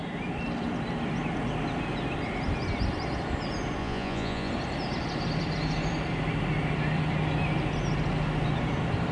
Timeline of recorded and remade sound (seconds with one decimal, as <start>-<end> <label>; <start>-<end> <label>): 0.0-3.8 recorded; 3.8-4.5 remade; 4.5-9.1 recorded